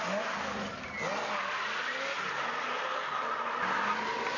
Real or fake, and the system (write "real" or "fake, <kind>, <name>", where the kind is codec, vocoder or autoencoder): real